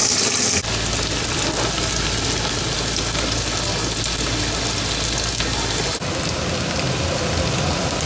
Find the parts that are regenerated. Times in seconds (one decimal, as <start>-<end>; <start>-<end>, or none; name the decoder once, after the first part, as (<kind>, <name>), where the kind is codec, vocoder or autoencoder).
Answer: none